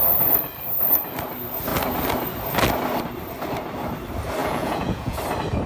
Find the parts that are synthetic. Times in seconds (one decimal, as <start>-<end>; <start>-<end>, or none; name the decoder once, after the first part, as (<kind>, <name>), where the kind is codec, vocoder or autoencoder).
4.4-5.2 (vocoder, Vocos)